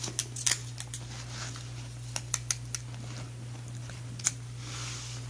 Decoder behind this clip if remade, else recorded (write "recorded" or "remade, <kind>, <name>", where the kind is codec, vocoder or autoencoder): recorded